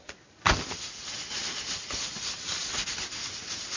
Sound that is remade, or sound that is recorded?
recorded